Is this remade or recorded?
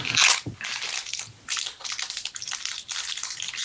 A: recorded